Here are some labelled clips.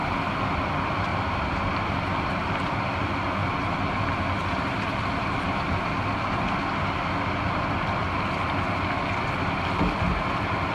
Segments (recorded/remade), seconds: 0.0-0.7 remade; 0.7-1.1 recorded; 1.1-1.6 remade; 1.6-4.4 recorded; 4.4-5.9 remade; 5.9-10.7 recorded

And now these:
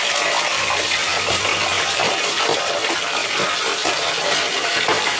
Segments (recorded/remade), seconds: 0.0-5.2 remade

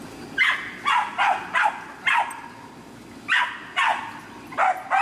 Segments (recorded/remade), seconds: 0.0-5.0 recorded

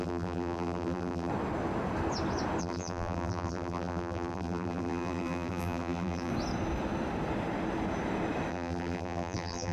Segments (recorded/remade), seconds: 0.0-1.3 remade; 1.3-2.6 recorded; 2.6-6.3 remade; 6.3-8.5 recorded; 8.5-9.7 remade